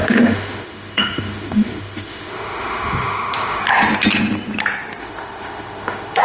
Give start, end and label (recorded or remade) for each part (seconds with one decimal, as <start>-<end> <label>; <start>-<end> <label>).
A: 0.0-3.6 remade; 3.6-5.0 recorded; 5.0-6.2 remade